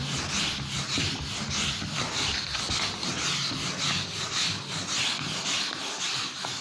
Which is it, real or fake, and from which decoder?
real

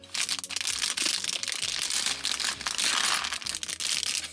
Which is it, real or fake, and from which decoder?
real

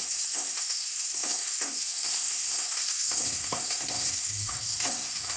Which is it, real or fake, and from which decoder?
fake, codec, SNAC